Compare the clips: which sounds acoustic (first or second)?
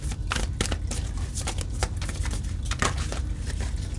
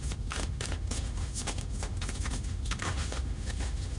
first